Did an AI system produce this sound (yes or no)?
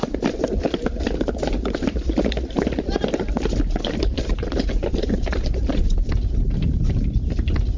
no